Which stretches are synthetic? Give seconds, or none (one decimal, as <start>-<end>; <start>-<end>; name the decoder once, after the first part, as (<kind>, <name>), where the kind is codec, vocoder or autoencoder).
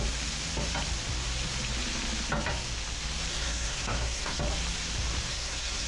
3.3-4.4 (codec, SNAC); 5.3-5.9